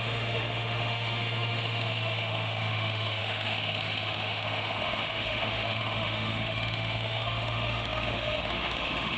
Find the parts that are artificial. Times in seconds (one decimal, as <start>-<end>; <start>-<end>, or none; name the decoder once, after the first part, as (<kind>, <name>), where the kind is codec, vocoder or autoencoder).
0.0-9.2 (autoencoder, DAC-VAE)